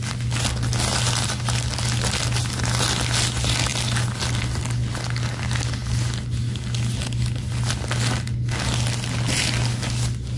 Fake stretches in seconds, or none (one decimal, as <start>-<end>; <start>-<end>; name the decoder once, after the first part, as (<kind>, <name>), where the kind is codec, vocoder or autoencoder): none